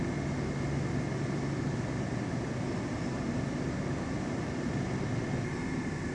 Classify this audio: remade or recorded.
recorded